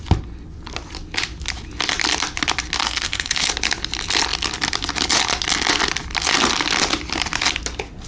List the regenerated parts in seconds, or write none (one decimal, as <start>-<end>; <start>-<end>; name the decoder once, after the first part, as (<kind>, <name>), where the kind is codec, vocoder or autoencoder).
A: 2.8-3.5 (codec, SNAC)